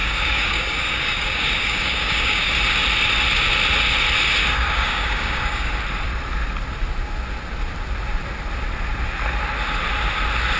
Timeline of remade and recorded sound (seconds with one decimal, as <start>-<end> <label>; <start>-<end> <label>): 0.0-2.5 remade; 2.5-4.4 recorded; 4.4-5.7 remade; 5.7-10.6 recorded